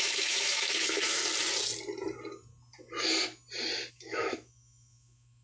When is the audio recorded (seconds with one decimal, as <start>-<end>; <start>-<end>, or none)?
1.2-3.9